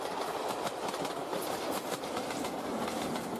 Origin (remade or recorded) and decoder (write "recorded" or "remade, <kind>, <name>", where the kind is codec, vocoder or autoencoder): recorded